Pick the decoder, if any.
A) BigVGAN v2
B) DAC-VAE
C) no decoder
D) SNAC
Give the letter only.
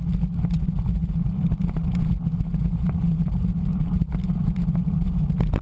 C